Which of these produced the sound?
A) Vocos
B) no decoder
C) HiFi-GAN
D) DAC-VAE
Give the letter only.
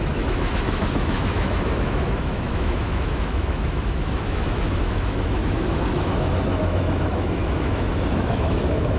D